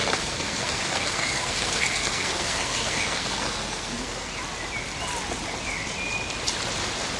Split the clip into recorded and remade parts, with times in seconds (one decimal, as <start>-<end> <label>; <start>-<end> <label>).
0.0-4.3 remade; 4.3-7.2 recorded